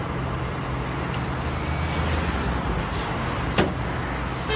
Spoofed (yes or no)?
no